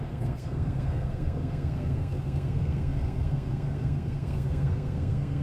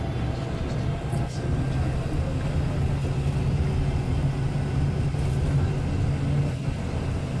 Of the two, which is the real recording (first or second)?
second